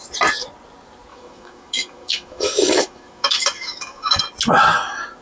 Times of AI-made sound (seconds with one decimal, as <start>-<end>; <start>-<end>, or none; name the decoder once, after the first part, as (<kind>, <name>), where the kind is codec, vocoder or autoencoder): 1.1-4.2 (autoencoder, DAC-VAE)